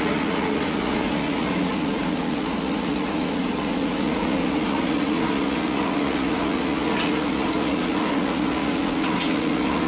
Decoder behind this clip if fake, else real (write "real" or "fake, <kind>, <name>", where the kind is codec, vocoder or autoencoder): fake, vocoder, Vocos